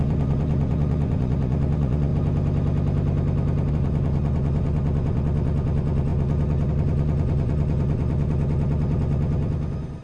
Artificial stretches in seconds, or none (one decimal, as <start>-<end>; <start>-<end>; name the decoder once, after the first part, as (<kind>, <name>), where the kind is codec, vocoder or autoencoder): 0.0-2.1 (vocoder, Vocos); 3.7-10.0